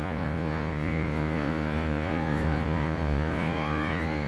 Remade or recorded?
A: remade